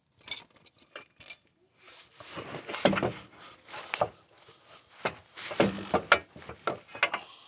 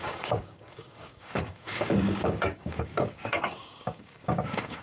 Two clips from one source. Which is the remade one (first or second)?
second